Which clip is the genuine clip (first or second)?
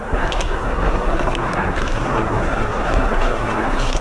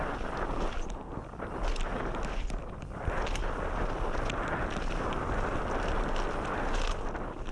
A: second